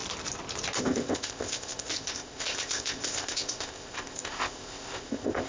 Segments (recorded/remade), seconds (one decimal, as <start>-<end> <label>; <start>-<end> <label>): 0.0-0.8 recorded; 0.8-5.5 remade